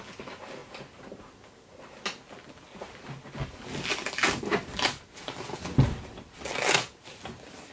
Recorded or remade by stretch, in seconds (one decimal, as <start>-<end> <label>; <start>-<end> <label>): 0.0-7.7 recorded